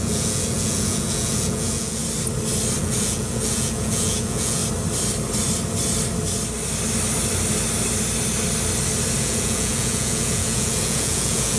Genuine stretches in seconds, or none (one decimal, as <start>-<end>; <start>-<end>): 2.0-2.8; 4.6-9.2

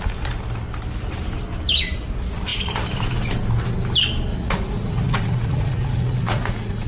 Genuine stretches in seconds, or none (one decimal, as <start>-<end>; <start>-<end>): 0.0-4.3

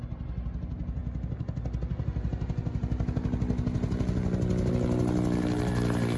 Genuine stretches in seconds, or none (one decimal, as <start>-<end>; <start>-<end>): 0.0-6.2

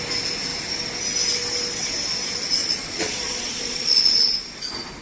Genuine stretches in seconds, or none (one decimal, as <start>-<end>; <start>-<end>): 0.0-2.6; 4.3-5.0